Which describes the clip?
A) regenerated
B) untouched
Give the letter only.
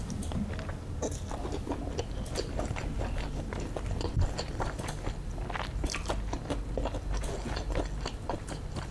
B